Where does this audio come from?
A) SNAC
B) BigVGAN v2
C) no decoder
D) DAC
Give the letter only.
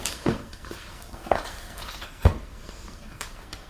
A